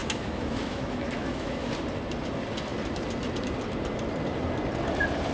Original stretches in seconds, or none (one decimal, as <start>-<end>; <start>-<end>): 1.7-5.3

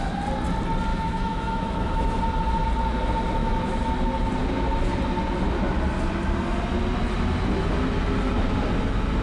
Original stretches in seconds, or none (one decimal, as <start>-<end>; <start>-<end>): 0.0-0.9; 2.2-3.4; 3.9-9.2

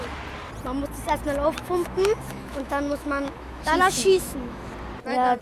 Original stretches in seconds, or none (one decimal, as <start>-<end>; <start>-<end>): 0.0-1.6; 4.7-5.4

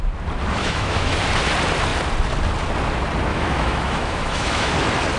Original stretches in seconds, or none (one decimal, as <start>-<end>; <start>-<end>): 0.0-0.6; 1.2-3.3; 4.7-5.2

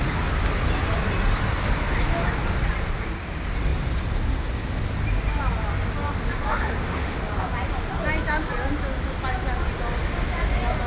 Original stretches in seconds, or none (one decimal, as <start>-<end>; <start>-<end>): 0.0-6.5; 7.2-10.9

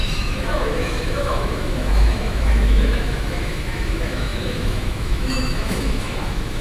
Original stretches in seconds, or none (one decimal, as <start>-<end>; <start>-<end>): none

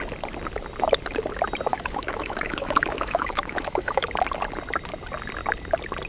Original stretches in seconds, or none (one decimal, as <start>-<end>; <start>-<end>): 0.0-1.7; 4.1-6.1

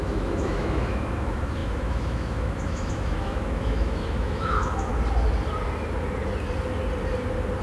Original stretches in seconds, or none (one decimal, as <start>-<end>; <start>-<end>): 4.9-7.6